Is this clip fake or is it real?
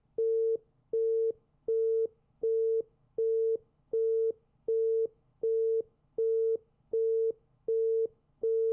fake